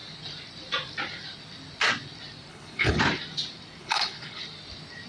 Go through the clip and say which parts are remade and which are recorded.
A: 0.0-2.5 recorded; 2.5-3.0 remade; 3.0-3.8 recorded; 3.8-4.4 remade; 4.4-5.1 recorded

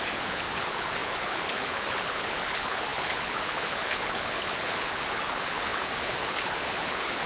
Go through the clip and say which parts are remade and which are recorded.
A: 0.0-7.3 remade

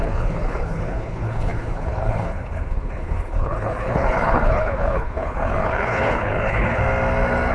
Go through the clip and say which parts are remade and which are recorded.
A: 0.0-6.8 remade; 6.8-7.5 recorded